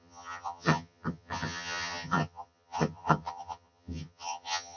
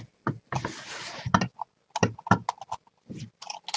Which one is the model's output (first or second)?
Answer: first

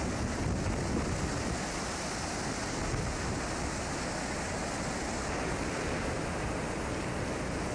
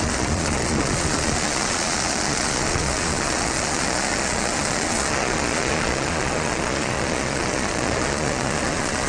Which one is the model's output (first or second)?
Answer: second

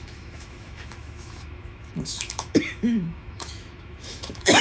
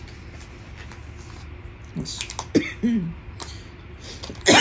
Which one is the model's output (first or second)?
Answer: first